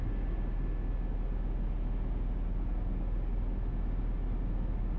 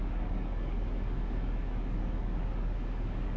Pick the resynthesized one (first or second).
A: second